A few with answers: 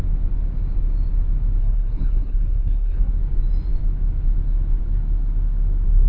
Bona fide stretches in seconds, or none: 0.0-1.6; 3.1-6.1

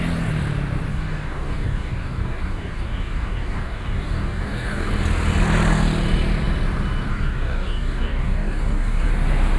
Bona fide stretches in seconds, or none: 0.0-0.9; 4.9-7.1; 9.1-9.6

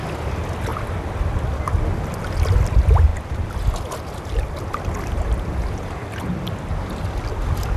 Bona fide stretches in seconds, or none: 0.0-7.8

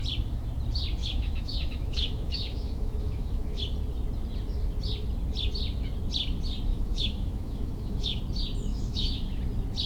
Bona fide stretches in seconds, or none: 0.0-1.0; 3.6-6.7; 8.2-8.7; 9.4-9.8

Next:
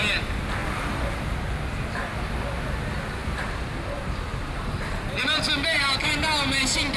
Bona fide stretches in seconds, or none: 0.0-7.0